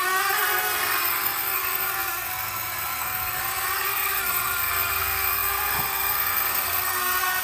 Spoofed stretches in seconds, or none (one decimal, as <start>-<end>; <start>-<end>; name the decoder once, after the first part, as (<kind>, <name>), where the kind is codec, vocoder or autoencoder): 0.0-7.4 (codec, SNAC)